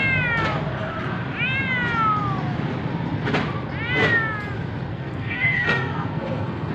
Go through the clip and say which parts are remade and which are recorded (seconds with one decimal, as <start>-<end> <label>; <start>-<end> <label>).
0.0-4.9 recorded; 4.9-6.7 remade